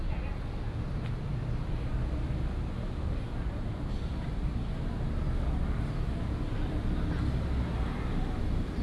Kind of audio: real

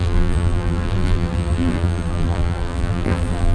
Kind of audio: fake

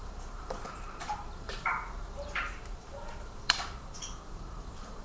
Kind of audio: fake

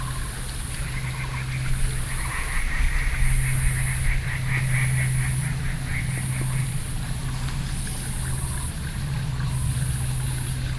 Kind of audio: real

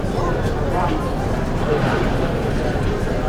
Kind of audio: fake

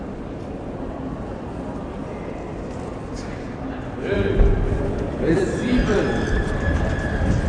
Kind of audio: fake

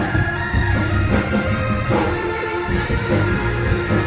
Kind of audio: fake